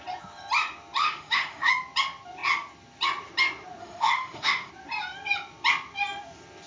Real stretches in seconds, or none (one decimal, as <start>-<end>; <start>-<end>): 0.0-1.0; 1.7-3.8; 4.7-6.7